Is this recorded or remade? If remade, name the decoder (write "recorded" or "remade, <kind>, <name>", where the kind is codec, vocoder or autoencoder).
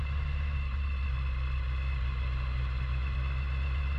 recorded